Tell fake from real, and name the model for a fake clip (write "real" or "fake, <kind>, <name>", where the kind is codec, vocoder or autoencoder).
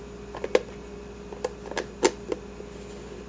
real